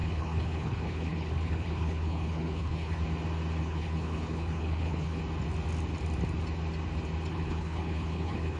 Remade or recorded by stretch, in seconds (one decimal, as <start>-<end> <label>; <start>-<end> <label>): 0.0-3.0 remade; 3.0-3.6 recorded; 3.6-5.2 remade; 5.2-7.3 recorded; 7.3-8.6 remade